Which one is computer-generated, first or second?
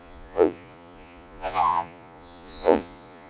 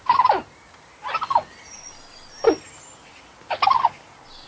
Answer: first